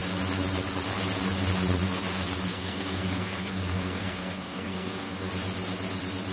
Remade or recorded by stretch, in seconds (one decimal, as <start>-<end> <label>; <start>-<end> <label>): 0.0-2.5 recorded; 2.5-5.3 remade; 5.3-6.3 recorded